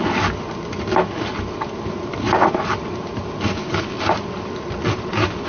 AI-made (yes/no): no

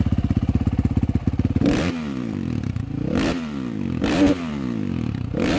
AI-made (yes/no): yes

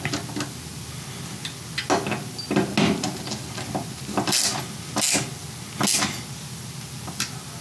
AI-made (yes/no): no